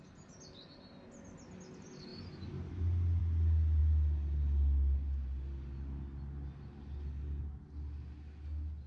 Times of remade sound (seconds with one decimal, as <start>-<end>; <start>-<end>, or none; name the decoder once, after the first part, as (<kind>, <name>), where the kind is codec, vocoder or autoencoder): none